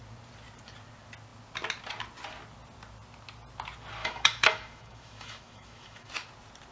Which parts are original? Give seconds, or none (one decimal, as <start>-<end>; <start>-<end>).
0.0-4.0; 6.1-6.7